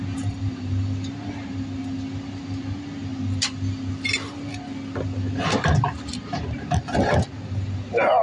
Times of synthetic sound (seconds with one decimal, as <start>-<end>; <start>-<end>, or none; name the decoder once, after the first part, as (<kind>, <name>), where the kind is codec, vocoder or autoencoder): none